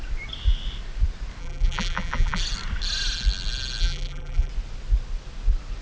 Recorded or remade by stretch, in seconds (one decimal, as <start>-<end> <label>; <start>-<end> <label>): 0.0-1.4 recorded; 1.4-2.4 remade; 2.4-3.8 recorded; 3.8-4.5 remade; 4.5-5.8 recorded